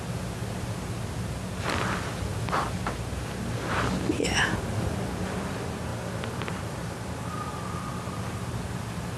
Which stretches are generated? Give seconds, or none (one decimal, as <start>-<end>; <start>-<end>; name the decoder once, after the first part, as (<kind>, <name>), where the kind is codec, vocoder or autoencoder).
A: none